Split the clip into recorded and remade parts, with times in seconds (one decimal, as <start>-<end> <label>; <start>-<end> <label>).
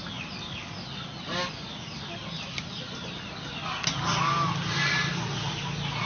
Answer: 0.0-6.1 recorded